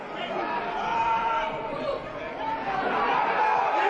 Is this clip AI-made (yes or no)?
no